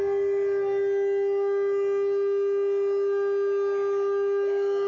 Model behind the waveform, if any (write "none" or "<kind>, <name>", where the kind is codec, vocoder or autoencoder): none